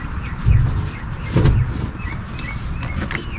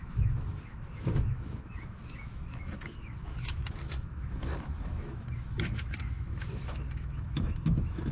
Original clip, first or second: first